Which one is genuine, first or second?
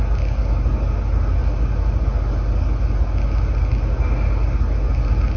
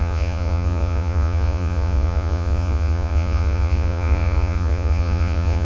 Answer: first